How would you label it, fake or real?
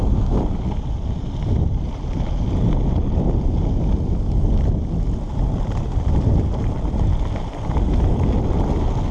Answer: real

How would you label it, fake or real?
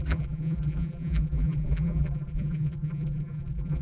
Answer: fake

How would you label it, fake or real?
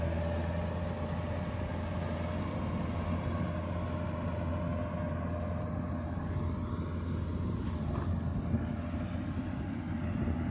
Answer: real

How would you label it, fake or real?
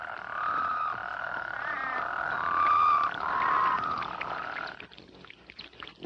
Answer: real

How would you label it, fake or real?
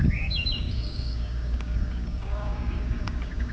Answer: fake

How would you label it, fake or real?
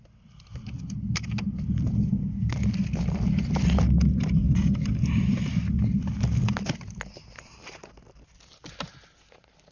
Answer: real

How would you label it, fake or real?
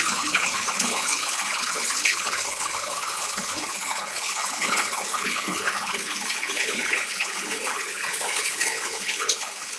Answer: fake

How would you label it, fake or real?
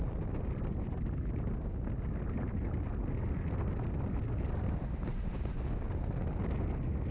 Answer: real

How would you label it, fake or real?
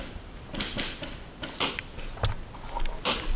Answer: real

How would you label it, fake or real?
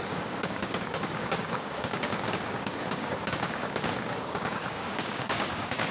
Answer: fake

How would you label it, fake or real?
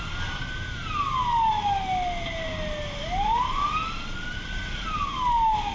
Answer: real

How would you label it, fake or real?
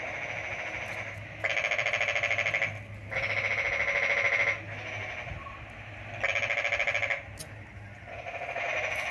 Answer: real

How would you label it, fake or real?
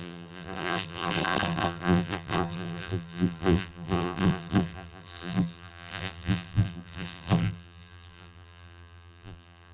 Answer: fake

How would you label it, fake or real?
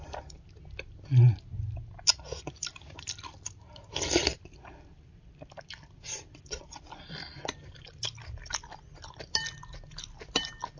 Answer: real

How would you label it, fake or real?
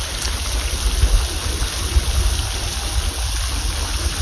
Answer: real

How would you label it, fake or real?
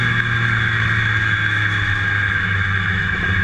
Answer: fake